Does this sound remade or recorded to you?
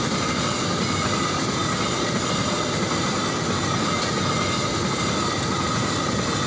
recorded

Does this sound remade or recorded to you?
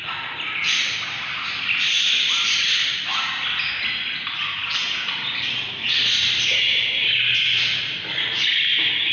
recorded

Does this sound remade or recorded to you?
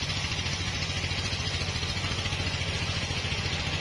remade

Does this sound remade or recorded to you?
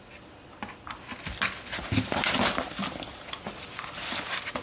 recorded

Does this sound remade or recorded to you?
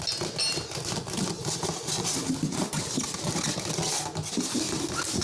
recorded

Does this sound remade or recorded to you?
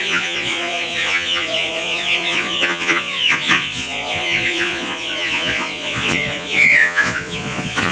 remade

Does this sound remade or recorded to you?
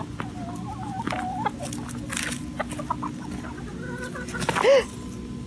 recorded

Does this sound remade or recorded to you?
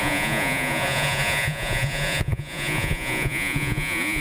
remade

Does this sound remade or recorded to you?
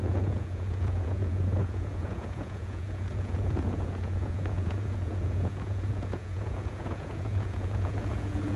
remade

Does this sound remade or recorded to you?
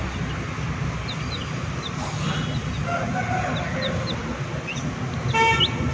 recorded